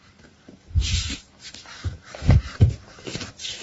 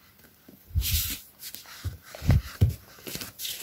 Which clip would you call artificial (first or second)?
first